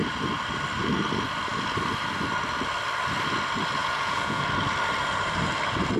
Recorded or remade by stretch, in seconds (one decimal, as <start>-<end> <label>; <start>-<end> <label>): 0.0-3.8 recorded; 3.8-4.4 remade; 4.4-6.0 recorded